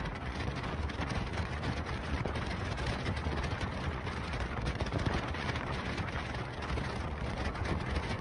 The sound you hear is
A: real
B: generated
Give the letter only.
B